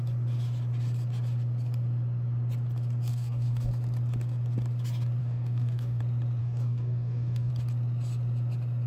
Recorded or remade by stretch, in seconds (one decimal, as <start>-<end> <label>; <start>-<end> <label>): 0.0-3.1 recorded; 3.1-3.7 remade; 3.7-5.2 recorded; 5.2-6.0 remade; 6.0-6.4 recorded; 6.4-7.5 remade; 7.5-8.9 recorded